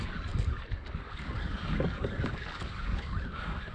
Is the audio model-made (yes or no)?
yes